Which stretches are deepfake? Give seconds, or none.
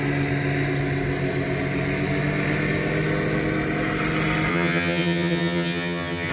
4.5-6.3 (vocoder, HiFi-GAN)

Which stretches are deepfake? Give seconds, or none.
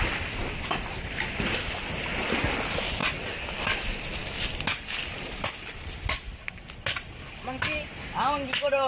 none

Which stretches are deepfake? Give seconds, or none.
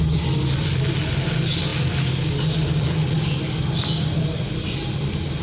none